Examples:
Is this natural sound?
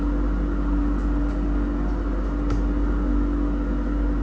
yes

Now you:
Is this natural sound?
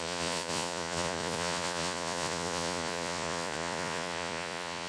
no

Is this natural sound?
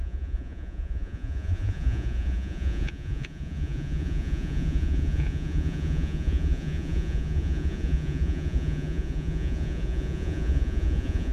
no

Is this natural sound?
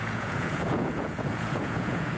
no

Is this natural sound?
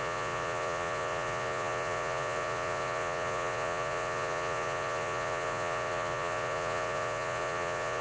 no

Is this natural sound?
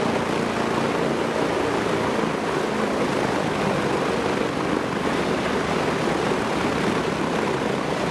yes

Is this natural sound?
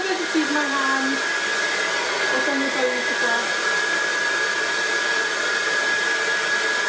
yes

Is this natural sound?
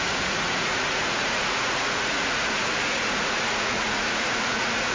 no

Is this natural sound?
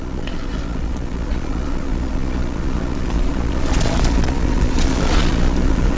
no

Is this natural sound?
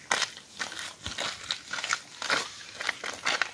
yes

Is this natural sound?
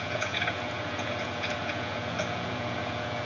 no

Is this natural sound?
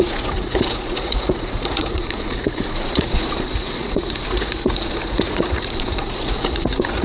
no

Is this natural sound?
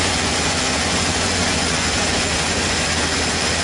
no